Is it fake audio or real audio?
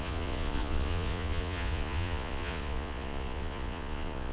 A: fake